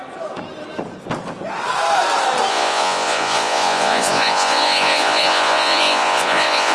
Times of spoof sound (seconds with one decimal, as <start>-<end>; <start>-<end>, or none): 2.5-6.7